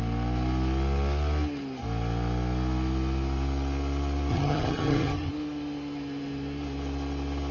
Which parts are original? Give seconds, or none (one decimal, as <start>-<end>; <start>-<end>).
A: 0.0-4.3; 5.3-7.5